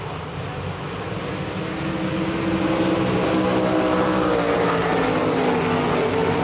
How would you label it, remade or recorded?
recorded